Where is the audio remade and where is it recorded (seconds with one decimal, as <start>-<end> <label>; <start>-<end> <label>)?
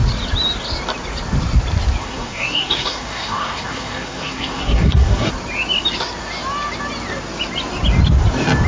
0.0-2.0 recorded; 2.0-5.3 remade; 5.3-8.7 recorded